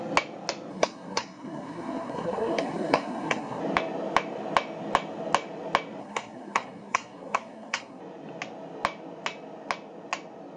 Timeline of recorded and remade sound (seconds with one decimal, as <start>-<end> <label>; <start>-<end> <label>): 0.0-0.7 recorded; 0.7-3.6 remade; 3.6-6.0 recorded; 6.0-8.0 remade; 8.0-10.6 recorded